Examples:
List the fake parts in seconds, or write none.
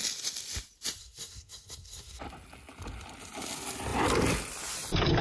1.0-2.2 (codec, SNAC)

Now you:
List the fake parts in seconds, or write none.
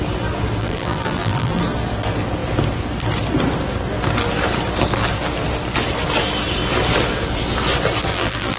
0.6-1.6 (vocoder, BigVGAN v2); 8.1-8.6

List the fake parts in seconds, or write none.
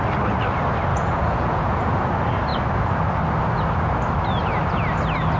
0.9-2.1 (vocoder, Vocos)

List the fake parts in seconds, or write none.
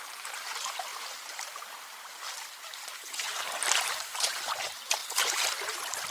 0.0-0.9 (vocoder, BigVGAN v2); 2.9-5.0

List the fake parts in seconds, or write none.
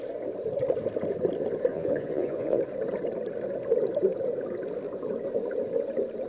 1.7-2.6 (vocoder, Vocos)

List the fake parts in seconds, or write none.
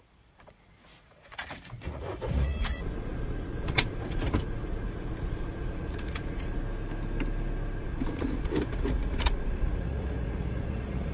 0.0-6.6 (vocoder, Vocos); 7.8-11.1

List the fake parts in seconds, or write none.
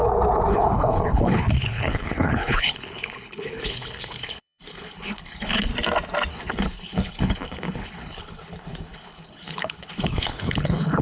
0.5-5.7 (codec, HILCodec); 6.3-11.0